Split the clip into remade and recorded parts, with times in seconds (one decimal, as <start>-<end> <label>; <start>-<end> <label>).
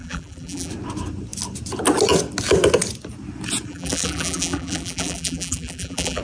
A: 0.0-0.7 remade; 0.7-3.7 recorded; 3.7-6.2 remade